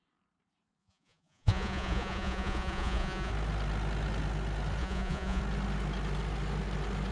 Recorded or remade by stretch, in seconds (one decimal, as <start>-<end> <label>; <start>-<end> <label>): 0.0-0.8 recorded; 0.8-3.3 remade; 3.3-4.8 recorded; 4.8-5.4 remade; 5.4-7.1 recorded